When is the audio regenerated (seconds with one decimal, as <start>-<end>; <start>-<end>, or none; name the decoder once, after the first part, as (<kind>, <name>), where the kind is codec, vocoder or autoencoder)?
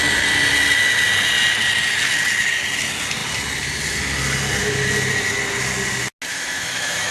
6.3-7.1 (autoencoder, DAC-VAE)